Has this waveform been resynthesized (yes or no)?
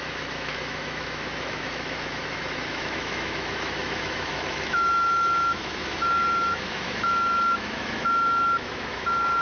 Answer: yes